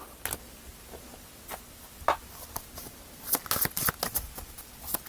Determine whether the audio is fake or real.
real